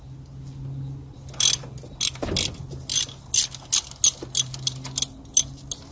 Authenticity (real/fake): real